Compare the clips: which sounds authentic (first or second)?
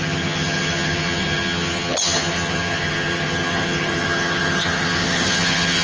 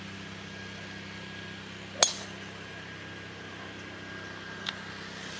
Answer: second